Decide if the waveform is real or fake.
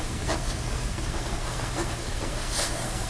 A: fake